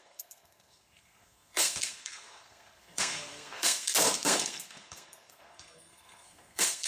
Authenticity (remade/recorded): remade